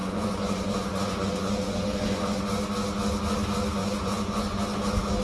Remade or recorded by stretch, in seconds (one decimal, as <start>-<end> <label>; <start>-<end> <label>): 0.0-2.4 remade; 2.4-3.8 recorded; 3.8-4.6 remade; 4.6-5.2 recorded